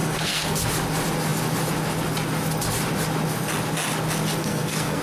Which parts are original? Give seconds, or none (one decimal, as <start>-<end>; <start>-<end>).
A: 0.6-4.4